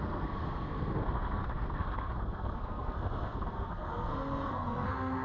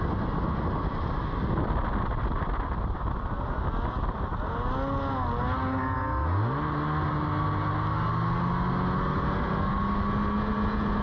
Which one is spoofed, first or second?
first